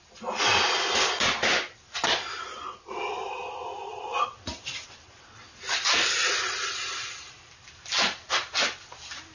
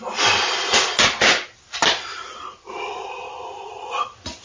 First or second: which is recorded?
first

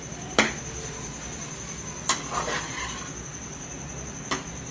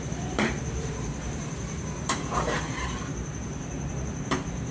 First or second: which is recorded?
first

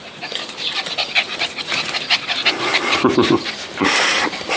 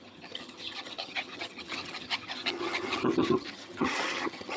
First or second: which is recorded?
first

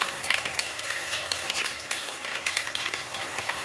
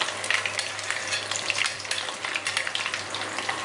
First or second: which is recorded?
second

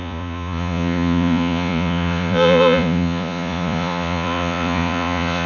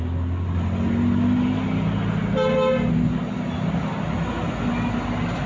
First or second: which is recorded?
second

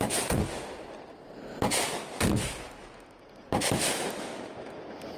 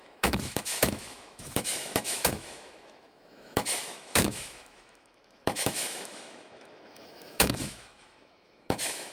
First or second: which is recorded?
first